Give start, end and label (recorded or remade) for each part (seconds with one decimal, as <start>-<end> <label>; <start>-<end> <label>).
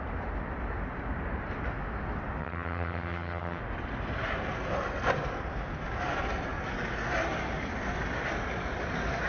0.0-2.4 recorded; 2.4-3.6 remade; 3.6-9.3 recorded